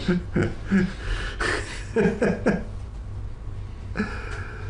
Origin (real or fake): real